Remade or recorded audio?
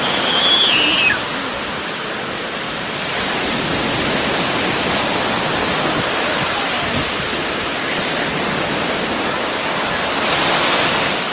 recorded